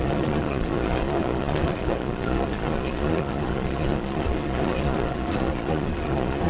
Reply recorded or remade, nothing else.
remade